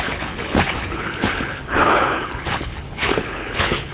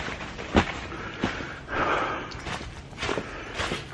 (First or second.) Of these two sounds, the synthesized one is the first